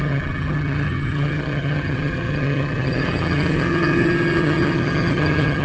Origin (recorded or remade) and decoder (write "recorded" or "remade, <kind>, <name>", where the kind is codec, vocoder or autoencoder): remade, vocoder, HiFi-GAN